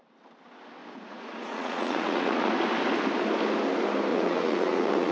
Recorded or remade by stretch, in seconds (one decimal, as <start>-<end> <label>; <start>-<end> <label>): 0.0-0.8 recorded; 0.8-2.5 remade; 2.5-4.1 recorded; 4.1-5.1 remade